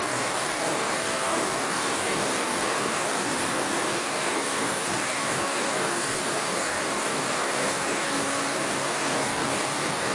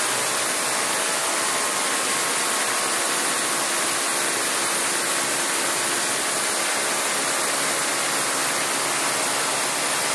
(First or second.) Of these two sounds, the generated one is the first